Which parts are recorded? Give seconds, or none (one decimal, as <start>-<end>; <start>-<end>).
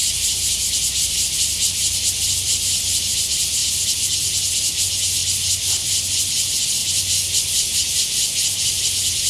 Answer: 3.6-4.5; 6.8-8.8